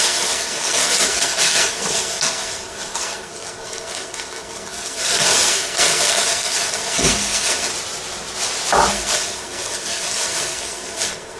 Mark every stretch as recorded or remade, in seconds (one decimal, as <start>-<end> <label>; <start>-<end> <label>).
0.0-7.7 remade; 7.7-8.9 recorded; 8.9-11.4 remade